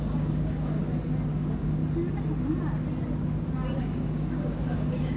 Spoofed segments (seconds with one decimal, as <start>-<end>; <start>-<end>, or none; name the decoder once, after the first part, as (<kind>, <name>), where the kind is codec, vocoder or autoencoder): 0.0-0.8 (codec, DAC); 1.3-1.8; 3.8-5.2